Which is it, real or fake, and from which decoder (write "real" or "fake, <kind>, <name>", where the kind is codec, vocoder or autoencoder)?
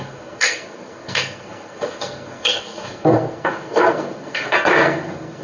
fake, codec, SNAC